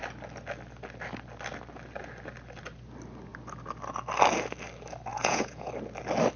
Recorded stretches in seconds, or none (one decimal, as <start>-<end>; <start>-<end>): 0.0-5.1; 5.7-6.4